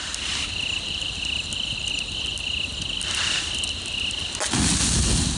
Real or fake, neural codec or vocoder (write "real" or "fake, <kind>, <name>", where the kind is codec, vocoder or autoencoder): real